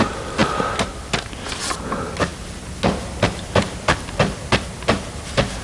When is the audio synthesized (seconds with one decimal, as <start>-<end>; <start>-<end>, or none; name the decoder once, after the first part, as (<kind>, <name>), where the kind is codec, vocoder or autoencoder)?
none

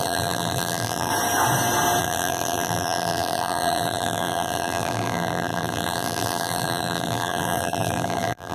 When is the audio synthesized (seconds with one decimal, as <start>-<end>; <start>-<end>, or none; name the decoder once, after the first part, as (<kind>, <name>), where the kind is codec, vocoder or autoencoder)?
0.0-1.1 (vocoder, BigVGAN v2); 2.0-8.5

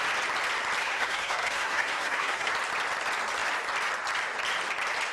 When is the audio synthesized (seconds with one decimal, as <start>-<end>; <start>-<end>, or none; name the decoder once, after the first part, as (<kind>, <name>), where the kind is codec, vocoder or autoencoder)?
0.8-2.5 (codec, SNAC)